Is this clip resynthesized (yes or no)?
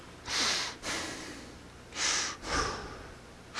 no